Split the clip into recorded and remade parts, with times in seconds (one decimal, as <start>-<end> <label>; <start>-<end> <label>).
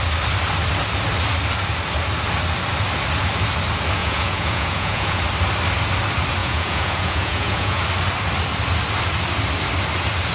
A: 0.0-4.0 recorded; 4.0-5.2 remade; 5.2-6.4 recorded; 6.4-7.8 remade; 7.8-10.3 recorded